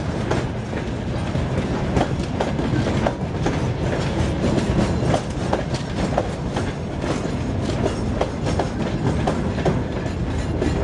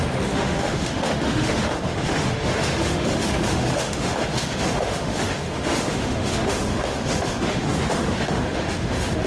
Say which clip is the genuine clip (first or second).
first